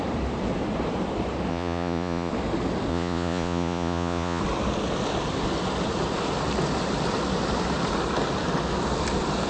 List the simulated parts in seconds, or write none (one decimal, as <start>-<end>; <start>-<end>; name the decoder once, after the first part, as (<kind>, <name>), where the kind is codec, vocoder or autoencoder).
1.5-2.3 (vocoder, Vocos); 2.9-4.4